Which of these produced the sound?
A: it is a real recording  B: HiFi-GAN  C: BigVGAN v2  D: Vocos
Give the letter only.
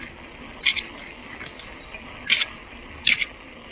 A